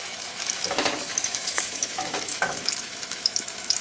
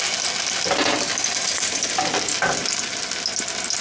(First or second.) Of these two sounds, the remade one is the first